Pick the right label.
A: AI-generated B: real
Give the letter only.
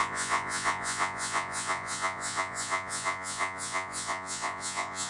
A